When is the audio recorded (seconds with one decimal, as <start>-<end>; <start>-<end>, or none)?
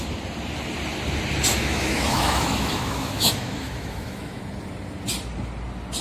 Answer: 0.0-1.5; 4.4-6.0